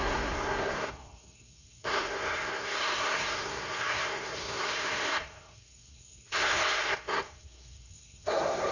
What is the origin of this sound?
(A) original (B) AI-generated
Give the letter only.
B